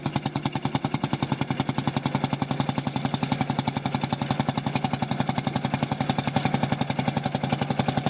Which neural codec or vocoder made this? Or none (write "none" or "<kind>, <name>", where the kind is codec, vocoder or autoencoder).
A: none